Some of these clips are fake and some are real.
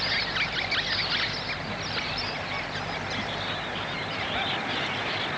real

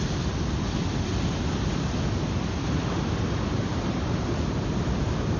real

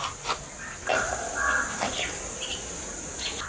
real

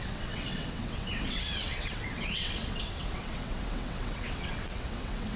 fake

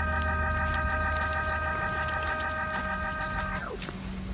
real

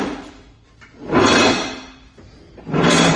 real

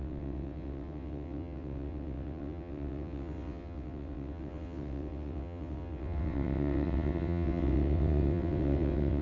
fake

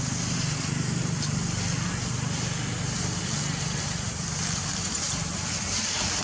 real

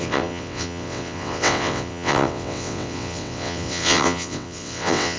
fake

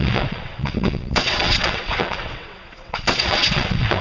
fake